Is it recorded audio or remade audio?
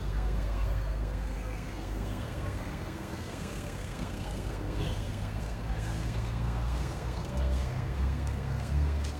remade